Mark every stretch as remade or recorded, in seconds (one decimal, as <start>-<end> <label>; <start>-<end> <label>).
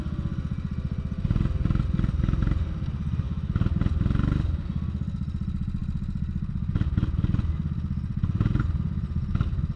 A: 0.0-9.8 recorded